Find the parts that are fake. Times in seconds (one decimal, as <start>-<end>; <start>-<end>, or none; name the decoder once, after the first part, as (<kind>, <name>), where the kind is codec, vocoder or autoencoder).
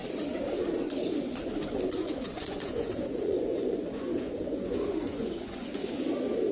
2.0-5.8 (vocoder, Vocos)